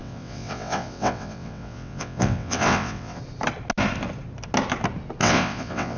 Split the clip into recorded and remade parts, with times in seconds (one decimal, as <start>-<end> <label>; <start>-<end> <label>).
0.0-3.2 remade; 3.2-5.2 recorded; 5.2-6.0 remade